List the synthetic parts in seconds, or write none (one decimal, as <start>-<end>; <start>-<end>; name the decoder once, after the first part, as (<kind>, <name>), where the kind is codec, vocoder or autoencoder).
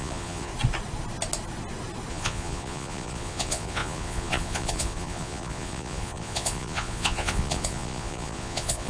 0.0-0.5 (vocoder, Vocos); 2.1-8.9